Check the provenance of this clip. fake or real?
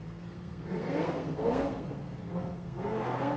fake